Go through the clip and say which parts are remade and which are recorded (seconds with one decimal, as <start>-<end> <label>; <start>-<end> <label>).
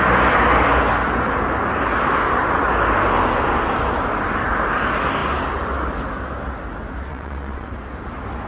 0.0-7.1 recorded; 7.1-7.7 remade; 7.7-8.5 recorded